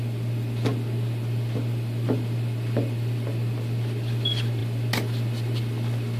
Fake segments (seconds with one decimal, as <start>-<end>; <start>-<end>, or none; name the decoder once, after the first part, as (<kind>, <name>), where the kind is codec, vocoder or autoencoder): none